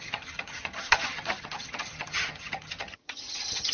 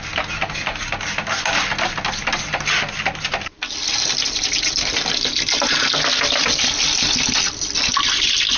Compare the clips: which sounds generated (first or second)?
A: first